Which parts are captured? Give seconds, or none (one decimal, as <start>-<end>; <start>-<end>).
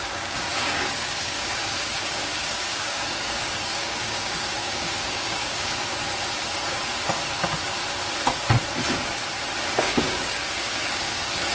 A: 6.0-9.8